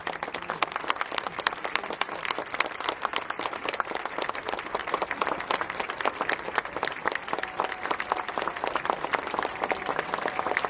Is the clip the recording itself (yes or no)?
yes